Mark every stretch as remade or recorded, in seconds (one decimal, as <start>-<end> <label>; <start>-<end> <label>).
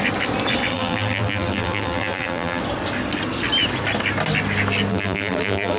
0.0-0.7 recorded; 0.7-2.6 remade; 2.6-4.9 recorded; 4.9-5.8 remade